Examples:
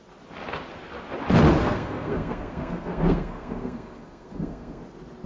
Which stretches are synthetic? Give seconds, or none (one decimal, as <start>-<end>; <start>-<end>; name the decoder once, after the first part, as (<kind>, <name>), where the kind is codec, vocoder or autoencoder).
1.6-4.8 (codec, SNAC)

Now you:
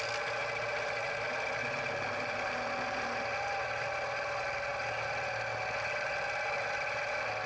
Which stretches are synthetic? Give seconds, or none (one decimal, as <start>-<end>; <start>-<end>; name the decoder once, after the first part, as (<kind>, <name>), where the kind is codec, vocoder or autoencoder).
none

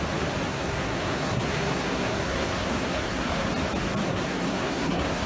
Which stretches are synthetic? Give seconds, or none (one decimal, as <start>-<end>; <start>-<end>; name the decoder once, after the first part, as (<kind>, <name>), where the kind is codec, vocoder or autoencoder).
0.5-3.5 (codec, SNAC); 4.0-5.3

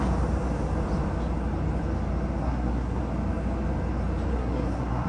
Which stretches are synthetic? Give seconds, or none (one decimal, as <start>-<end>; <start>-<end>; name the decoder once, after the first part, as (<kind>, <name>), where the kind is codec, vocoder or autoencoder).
2.4-3.0 (codec, SNAC); 4.3-5.1

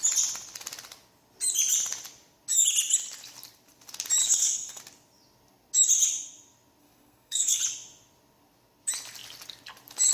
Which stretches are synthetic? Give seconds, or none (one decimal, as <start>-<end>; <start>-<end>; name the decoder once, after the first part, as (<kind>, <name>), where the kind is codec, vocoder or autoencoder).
4.2-4.8 (codec, SNAC); 6.8-7.6

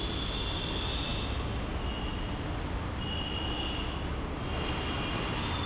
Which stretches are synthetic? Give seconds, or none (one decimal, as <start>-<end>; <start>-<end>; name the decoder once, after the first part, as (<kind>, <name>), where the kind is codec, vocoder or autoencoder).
none